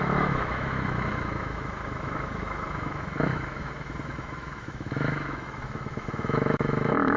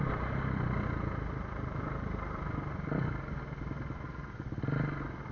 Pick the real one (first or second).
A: second